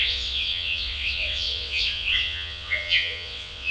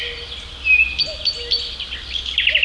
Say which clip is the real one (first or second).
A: second